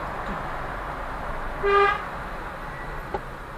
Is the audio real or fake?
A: real